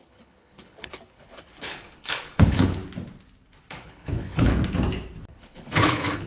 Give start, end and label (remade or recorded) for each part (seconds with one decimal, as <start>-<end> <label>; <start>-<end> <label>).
0.0-2.8 remade; 2.8-3.7 recorded; 3.7-4.5 remade; 4.5-5.3 recorded; 5.3-6.3 remade